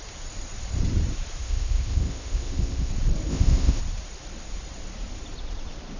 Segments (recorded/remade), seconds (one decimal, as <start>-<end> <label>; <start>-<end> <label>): 0.0-1.4 recorded; 1.4-2.9 remade; 2.9-3.3 recorded; 3.3-3.8 remade; 3.8-6.0 recorded